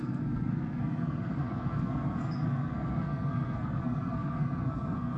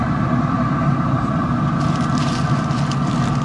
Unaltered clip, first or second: second